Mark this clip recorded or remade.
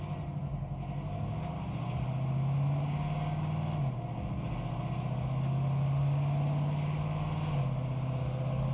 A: recorded